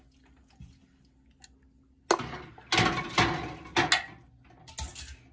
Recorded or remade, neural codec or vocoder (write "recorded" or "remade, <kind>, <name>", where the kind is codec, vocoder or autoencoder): recorded